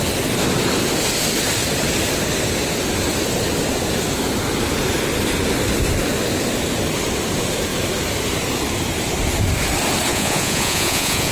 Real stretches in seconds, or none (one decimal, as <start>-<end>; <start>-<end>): 0.0-10.1